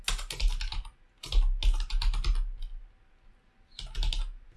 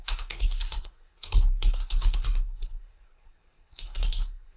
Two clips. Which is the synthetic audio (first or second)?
second